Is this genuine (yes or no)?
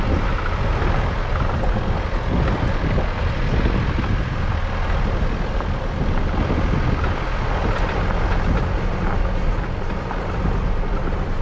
yes